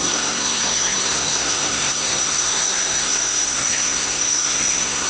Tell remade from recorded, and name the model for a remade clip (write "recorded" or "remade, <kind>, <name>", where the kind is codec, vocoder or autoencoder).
remade, codec, SNAC